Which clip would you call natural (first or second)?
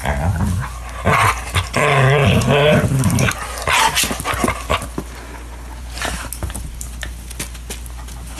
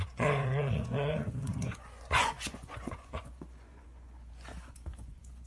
first